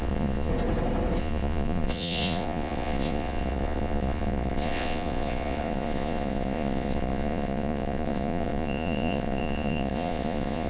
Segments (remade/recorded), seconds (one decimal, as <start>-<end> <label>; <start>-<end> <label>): 0.0-0.5 remade; 0.5-1.2 recorded; 1.2-10.7 remade